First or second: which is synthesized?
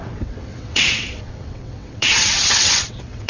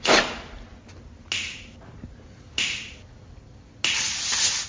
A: first